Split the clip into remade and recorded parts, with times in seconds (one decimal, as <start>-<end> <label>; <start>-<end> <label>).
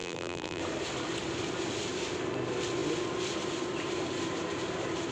0.0-0.6 remade; 0.6-5.1 recorded